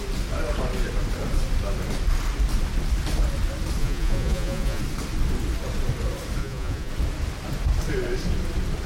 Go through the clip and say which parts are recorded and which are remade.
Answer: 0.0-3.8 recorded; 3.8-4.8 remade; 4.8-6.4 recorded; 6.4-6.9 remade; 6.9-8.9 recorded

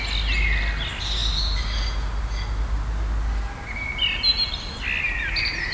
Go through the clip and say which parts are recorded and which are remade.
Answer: 0.0-5.7 recorded

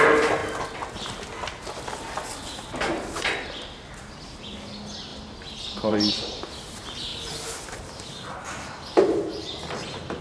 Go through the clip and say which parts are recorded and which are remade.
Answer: 0.0-10.2 recorded

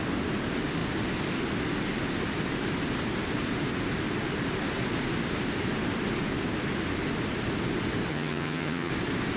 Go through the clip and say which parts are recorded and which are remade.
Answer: 0.0-8.1 recorded; 8.1-8.9 remade; 8.9-9.4 recorded